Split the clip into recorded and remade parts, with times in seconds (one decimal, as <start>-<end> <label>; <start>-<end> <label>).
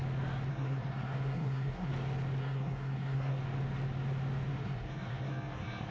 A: 0.0-0.5 recorded; 0.5-1.9 remade; 1.9-2.4 recorded; 2.4-3.4 remade; 3.4-4.5 recorded; 4.5-5.9 remade